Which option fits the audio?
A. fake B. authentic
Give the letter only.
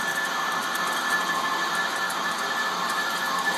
B